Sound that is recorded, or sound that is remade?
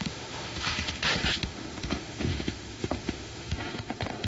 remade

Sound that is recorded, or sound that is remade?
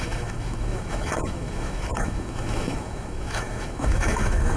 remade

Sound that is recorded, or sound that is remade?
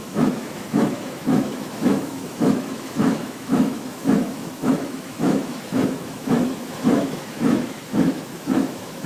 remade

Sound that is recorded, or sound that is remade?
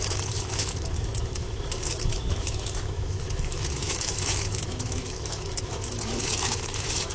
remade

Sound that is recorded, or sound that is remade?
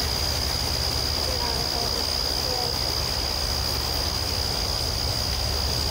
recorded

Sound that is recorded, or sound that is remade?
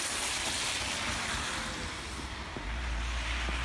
recorded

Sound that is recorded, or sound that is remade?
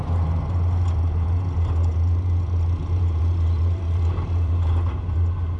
recorded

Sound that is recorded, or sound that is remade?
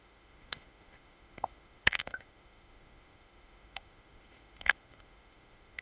remade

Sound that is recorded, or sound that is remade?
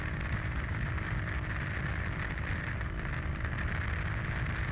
recorded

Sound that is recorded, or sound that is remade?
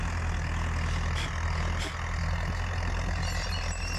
recorded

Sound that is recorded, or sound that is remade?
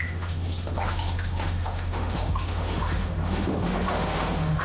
remade